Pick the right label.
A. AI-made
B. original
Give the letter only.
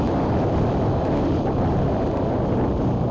B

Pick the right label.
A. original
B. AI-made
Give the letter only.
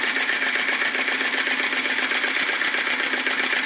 A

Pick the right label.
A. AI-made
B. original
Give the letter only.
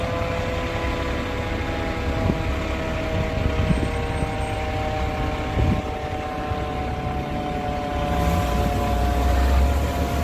B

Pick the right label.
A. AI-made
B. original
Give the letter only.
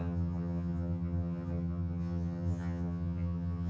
A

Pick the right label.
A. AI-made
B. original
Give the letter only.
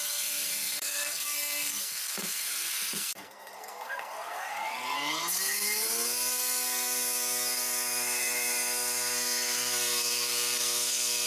A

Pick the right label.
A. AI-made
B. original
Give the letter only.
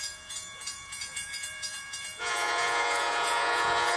A